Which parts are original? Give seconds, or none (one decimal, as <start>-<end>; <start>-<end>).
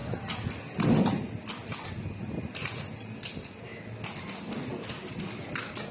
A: 0.0-5.9